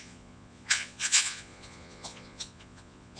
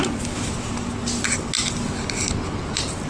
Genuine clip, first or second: second